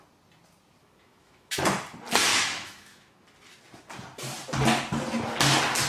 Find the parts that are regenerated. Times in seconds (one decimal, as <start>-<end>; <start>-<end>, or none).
0.8-1.6; 2.3-3.2

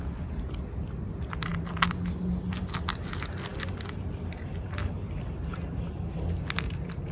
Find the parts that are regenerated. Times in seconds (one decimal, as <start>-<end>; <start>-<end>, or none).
none